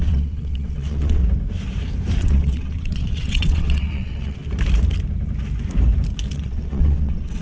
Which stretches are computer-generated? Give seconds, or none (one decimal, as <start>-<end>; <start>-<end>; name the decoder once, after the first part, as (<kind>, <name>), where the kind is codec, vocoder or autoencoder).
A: 0.0-1.2 (vocoder, WaveNeXt); 2.2-4.4; 6.3-7.4